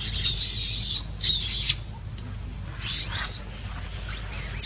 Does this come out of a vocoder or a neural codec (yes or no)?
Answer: no